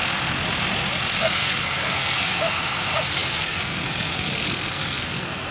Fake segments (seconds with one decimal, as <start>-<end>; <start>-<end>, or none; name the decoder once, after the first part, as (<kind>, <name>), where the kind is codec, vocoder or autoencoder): 1.2-5.5 (codec, SNAC)